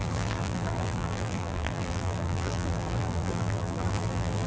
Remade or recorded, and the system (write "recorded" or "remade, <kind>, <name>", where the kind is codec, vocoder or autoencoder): remade, vocoder, BigVGAN v2